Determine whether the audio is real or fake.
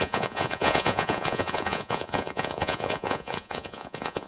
fake